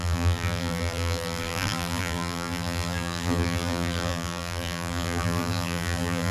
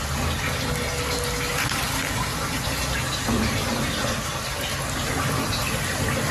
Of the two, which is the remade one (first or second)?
first